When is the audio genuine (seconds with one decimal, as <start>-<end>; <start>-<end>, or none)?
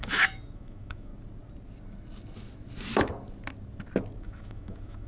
1.1-4.2